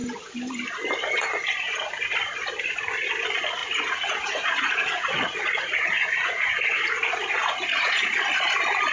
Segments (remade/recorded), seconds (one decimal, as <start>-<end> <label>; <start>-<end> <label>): 0.0-3.6 recorded; 3.6-8.2 remade; 8.2-8.9 recorded